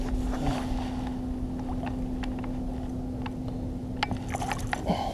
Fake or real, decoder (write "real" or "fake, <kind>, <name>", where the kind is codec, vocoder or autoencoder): real